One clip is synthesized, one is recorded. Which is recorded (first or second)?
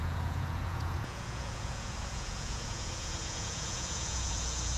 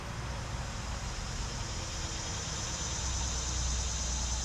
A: second